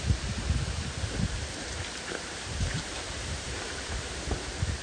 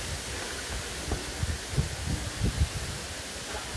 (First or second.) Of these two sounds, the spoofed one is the first